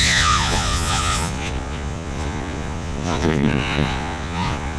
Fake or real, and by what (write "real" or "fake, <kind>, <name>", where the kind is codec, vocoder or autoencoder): fake, vocoder, Vocos